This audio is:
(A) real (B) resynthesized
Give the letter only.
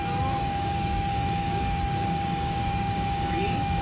B